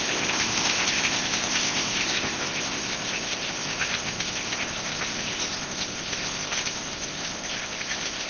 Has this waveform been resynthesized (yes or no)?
yes